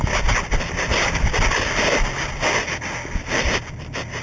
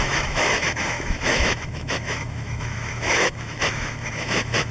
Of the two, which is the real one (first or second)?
first